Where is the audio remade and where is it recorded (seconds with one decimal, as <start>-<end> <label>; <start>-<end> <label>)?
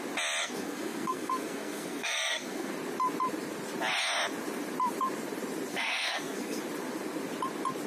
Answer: 0.0-0.4 recorded; 0.4-2.7 remade; 2.7-5.7 recorded; 5.7-6.6 remade; 6.6-7.9 recorded